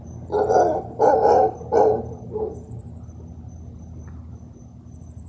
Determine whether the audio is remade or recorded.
recorded